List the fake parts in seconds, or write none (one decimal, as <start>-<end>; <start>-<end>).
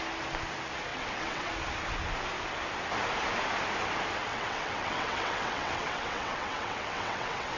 0.9-1.5; 4.3-7.6